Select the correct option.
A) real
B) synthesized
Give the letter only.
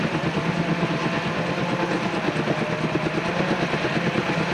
A